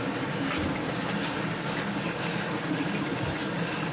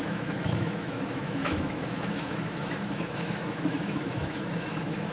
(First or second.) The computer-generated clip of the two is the second